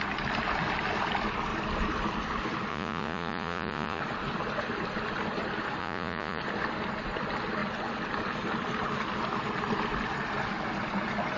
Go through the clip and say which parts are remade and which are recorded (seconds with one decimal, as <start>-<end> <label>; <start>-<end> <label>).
0.0-2.7 recorded; 2.7-4.0 remade; 4.0-5.8 recorded; 5.8-6.4 remade; 6.4-11.4 recorded